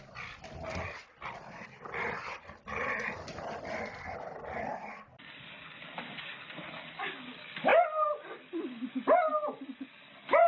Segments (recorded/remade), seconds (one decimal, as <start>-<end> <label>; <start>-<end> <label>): 0.0-10.5 recorded